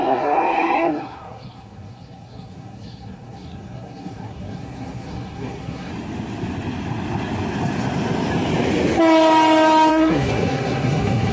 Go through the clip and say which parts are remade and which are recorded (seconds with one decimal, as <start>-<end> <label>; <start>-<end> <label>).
0.0-5.9 remade; 5.9-9.9 recorded; 9.9-11.3 remade